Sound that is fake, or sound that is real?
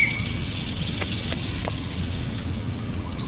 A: fake